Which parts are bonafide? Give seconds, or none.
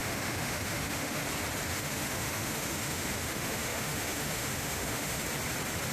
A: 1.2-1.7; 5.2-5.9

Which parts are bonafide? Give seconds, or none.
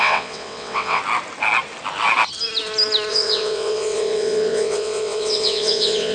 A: 1.0-3.1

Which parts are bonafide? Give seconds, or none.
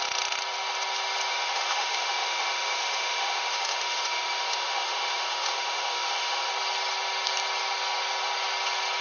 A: 0.0-1.3; 6.5-9.0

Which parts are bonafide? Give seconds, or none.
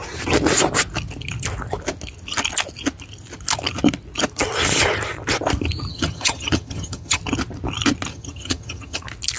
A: 0.0-5.9; 7.2-8.1; 9.0-9.4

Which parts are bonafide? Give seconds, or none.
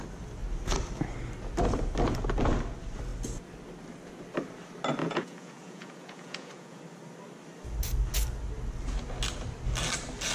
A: 0.0-5.0; 6.8-10.3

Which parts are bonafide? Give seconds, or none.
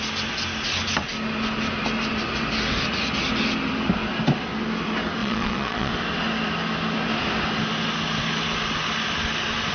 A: 0.0-5.2; 5.9-9.7